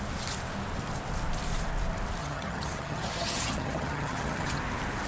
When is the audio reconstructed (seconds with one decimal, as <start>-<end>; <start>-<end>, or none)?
2.2-4.6